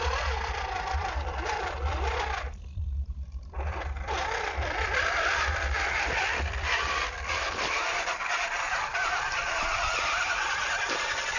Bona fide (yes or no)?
no